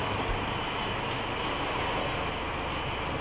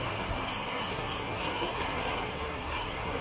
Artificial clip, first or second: second